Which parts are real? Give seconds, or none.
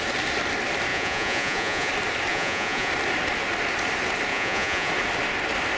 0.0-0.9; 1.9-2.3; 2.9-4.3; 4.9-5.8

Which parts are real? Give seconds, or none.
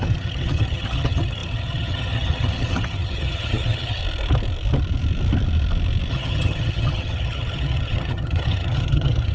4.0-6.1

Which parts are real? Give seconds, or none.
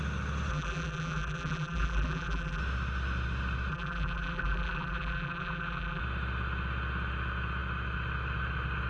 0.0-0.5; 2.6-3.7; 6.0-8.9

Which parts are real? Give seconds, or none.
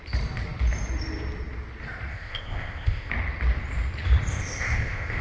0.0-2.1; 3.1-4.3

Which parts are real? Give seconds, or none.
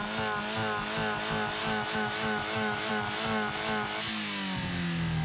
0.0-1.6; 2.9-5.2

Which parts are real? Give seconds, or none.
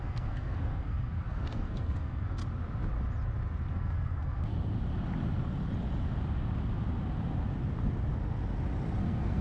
2.4-3.7; 4.5-9.0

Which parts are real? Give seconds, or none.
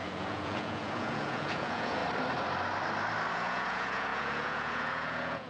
2.0-3.3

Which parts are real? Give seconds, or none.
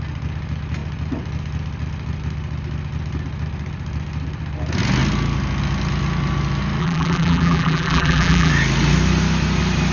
0.0-6.8; 8.5-9.9